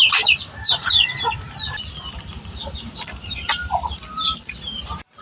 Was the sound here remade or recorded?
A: remade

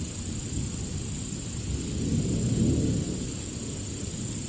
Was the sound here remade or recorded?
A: recorded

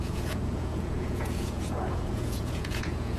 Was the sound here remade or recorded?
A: remade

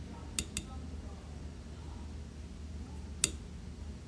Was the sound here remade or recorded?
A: recorded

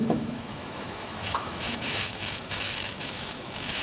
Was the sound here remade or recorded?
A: remade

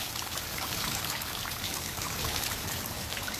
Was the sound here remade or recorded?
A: remade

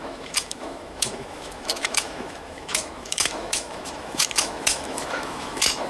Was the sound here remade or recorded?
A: remade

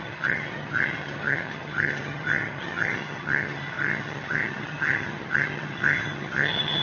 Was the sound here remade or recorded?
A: remade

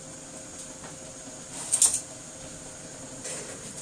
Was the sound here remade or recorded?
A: recorded